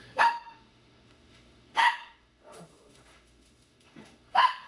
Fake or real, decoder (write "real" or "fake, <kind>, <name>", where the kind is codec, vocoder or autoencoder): fake, autoencoder, DAC-VAE